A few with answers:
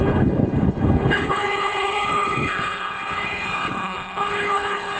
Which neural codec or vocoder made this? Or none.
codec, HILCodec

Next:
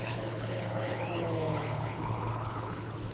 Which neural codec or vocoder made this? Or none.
codec, HILCodec